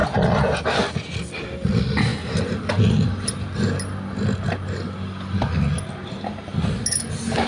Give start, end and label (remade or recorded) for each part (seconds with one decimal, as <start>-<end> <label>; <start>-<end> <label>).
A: 0.0-7.5 recorded